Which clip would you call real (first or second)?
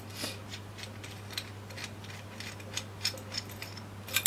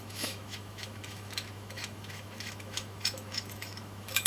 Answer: first